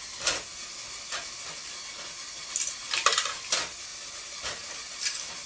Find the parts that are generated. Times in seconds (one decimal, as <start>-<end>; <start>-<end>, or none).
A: none